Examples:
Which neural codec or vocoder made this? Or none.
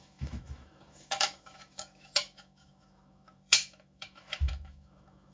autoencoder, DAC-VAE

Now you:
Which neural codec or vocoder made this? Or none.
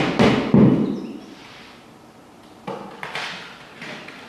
none